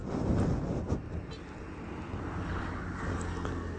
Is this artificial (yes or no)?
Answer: no